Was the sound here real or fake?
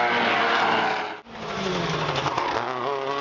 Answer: real